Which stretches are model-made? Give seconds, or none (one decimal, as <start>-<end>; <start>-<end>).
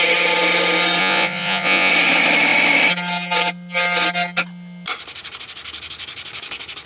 1.0-1.9